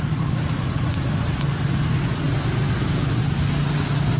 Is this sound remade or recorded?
recorded